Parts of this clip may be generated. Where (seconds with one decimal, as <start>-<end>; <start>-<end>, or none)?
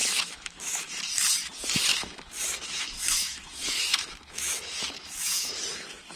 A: 0.0-0.9; 1.9-5.5